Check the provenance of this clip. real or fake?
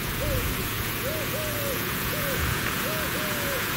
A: fake